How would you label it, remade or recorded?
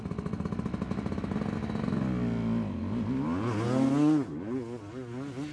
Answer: recorded